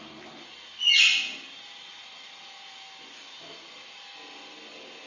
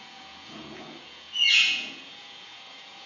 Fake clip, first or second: second